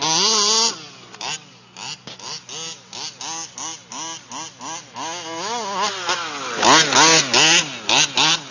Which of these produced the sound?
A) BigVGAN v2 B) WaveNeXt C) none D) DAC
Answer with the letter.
C